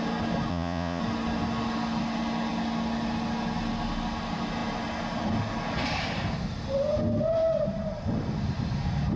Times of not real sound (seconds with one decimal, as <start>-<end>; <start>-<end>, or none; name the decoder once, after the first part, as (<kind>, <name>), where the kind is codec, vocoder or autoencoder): 0.5-1.0 (vocoder, Vocos)